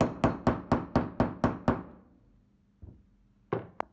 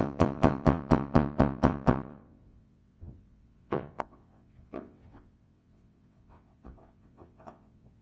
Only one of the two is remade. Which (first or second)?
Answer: second